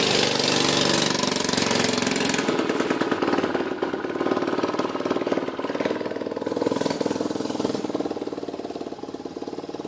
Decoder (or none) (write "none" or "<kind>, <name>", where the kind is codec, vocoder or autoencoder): none